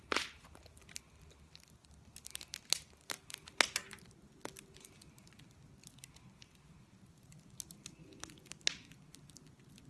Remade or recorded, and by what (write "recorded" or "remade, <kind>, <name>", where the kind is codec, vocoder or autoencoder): recorded